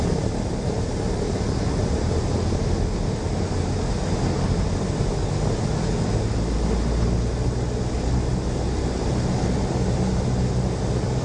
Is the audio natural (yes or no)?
yes